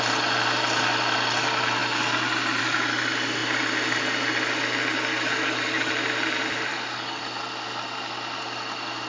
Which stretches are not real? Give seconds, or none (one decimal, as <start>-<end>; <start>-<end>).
5.1-5.9; 6.7-7.2